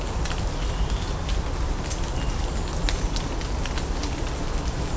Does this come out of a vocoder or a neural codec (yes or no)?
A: no